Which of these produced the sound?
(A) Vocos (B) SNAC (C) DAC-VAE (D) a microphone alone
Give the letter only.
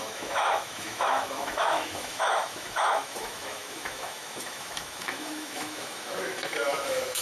C